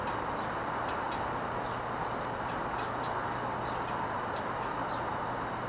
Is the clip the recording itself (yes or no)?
yes